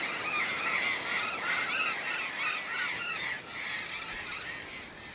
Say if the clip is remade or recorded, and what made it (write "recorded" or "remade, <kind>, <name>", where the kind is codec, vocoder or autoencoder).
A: recorded